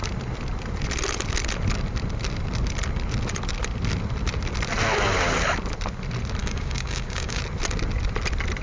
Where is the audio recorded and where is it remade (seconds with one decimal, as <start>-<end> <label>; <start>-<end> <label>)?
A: 0.0-6.4 recorded; 6.4-7.4 remade; 7.4-8.6 recorded